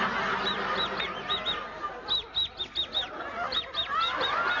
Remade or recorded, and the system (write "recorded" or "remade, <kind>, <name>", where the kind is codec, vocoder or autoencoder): recorded